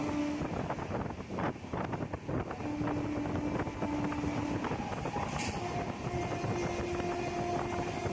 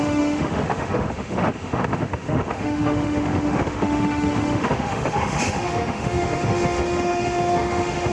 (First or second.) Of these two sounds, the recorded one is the first